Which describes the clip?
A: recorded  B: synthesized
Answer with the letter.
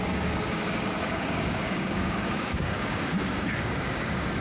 B